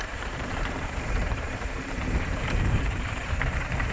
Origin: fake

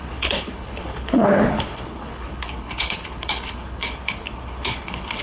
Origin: fake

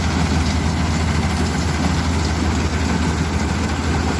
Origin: real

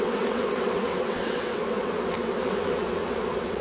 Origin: fake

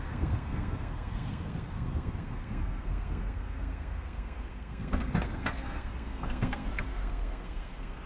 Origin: fake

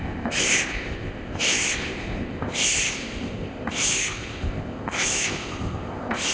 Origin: fake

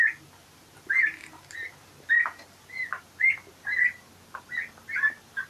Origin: real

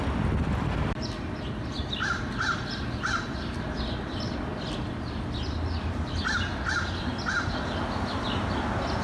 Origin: real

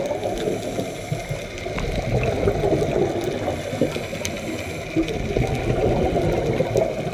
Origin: real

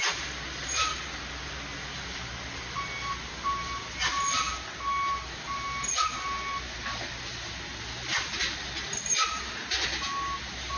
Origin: real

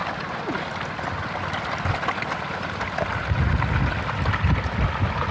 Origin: real